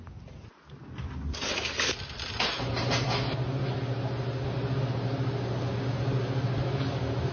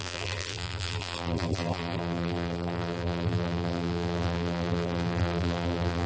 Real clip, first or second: first